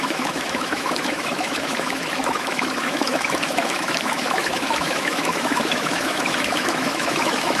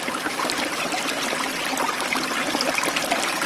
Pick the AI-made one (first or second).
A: first